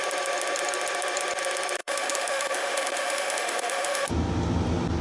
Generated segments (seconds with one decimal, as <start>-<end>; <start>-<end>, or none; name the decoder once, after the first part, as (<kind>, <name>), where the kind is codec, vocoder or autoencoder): 1.8-4.1 (autoencoder, DAC-VAE)